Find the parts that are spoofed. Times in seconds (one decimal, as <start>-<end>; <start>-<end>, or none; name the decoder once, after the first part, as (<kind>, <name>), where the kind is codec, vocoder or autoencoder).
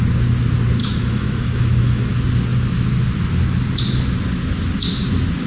0.8-2.1 (autoencoder, DAC-VAE)